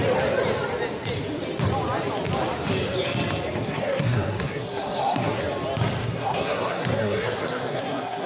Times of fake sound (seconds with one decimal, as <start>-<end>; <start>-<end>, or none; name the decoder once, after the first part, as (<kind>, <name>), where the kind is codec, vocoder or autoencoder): 3.6-5.4 (codec, SNAC); 6.0-8.3